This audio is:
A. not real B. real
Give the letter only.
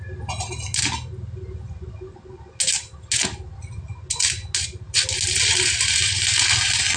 B